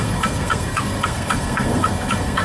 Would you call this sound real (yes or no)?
no